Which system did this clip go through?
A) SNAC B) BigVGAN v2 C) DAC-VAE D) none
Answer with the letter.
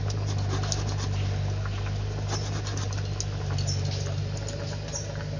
D